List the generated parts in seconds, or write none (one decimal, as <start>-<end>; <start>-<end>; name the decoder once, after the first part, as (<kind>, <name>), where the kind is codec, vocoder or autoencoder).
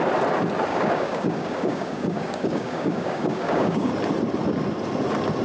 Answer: 0.7-3.9 (codec, DAC)